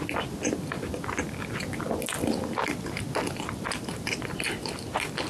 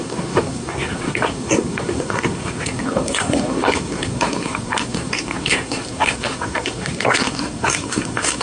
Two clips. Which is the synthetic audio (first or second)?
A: second